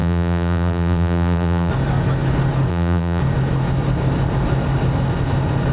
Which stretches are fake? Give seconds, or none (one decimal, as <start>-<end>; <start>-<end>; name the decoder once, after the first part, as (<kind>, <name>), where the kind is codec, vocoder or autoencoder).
0.0-1.7 (vocoder, BigVGAN v2); 2.7-3.2